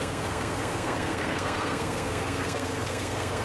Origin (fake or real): fake